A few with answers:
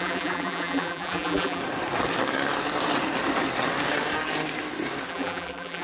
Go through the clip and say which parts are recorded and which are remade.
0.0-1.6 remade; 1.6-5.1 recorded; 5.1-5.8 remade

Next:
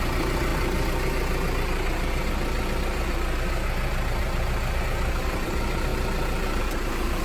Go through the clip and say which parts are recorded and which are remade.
0.0-7.2 remade

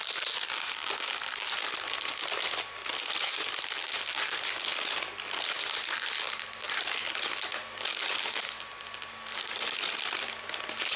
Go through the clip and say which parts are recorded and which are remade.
0.0-11.0 recorded

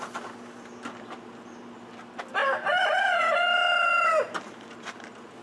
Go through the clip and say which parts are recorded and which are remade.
0.0-2.4 recorded; 2.4-4.7 remade; 4.7-5.4 recorded

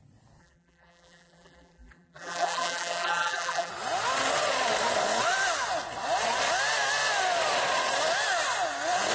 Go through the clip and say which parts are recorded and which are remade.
0.0-0.4 recorded; 0.4-3.7 remade; 3.7-9.1 recorded